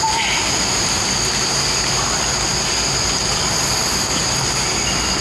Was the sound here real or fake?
real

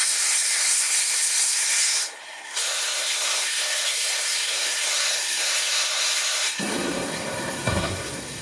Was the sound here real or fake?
fake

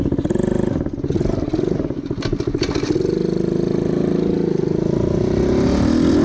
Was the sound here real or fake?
real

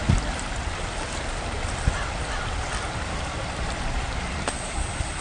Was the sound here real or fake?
real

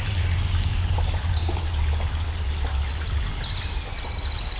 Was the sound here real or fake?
real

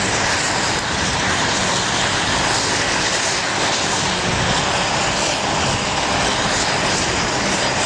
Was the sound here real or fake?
real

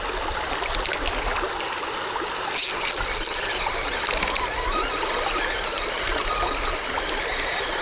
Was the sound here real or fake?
real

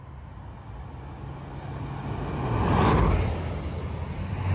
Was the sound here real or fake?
real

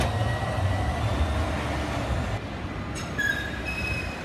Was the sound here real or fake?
real